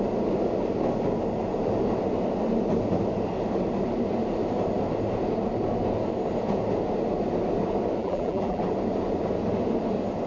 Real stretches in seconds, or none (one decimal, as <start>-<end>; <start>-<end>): 0.0-8.0; 8.6-10.3